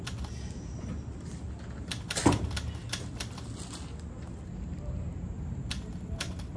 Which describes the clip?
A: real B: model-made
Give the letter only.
A